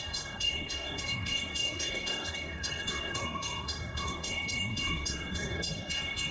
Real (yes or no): no